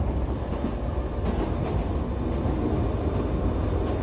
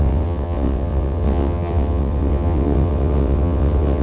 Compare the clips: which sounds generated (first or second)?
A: second